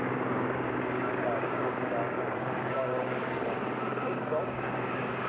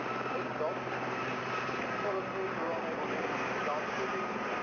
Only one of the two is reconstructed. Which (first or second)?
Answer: first